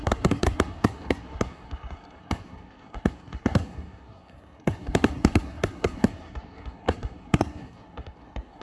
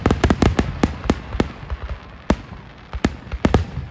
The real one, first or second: second